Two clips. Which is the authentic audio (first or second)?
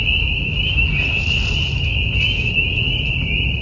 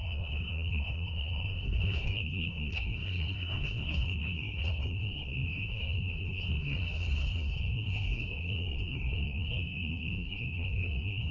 first